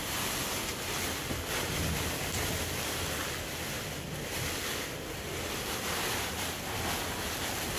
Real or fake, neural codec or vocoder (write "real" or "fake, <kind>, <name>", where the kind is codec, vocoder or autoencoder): real